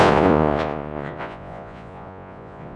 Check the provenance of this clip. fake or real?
fake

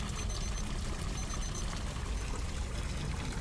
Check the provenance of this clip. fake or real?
real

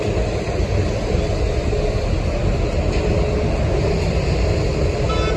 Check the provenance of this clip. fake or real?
real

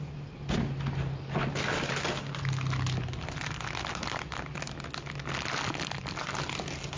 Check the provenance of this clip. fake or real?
real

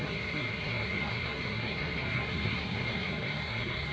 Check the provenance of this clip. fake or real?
fake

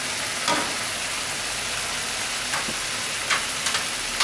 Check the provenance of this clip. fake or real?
real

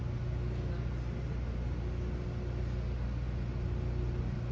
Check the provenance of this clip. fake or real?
real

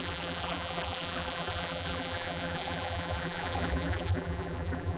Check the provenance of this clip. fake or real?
fake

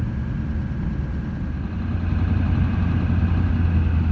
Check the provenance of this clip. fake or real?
real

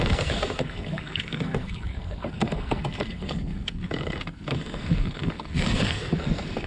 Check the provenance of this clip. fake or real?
fake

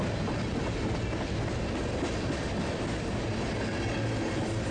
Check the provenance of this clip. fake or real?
real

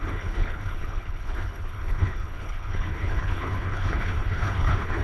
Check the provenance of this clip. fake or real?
fake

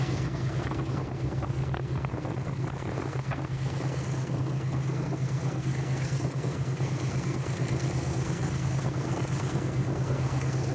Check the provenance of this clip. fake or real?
fake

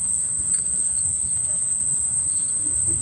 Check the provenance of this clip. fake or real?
fake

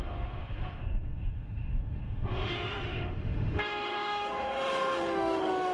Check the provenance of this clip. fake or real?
fake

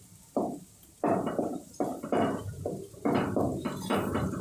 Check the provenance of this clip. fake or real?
fake